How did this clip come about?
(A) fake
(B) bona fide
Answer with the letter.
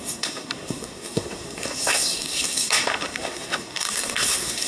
A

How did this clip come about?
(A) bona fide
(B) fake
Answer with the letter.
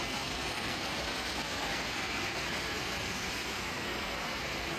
B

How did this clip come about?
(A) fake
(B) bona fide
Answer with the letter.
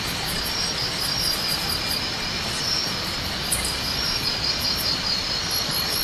B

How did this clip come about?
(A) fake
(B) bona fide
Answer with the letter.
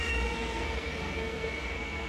A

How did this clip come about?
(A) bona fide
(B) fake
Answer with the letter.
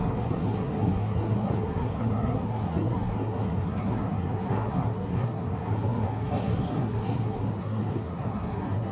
B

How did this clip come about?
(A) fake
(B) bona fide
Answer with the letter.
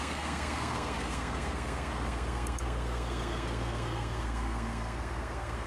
A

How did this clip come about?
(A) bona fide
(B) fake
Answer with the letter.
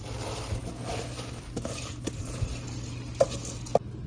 A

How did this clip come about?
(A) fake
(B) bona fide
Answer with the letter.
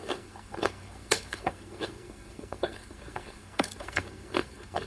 A